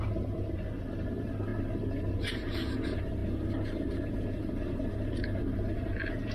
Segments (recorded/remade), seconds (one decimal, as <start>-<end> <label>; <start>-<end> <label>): 0.0-6.3 remade